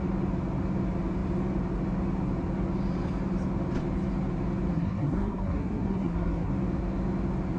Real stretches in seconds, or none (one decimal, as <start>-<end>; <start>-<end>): 0.0-4.7; 6.5-7.6